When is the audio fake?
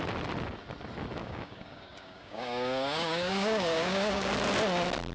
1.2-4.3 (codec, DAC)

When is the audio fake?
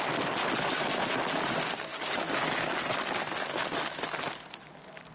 none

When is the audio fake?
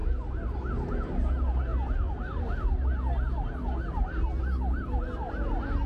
none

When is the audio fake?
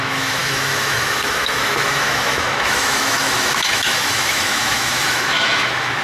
0.0-6.0 (autoencoder, DAC-VAE)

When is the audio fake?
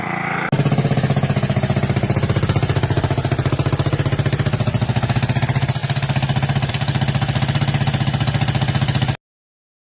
none